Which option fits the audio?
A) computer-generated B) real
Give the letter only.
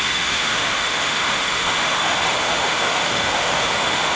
A